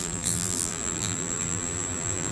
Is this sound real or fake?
fake